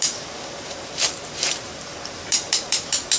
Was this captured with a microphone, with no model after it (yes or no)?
no